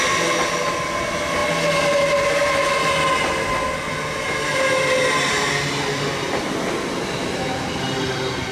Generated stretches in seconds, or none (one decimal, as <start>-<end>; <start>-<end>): none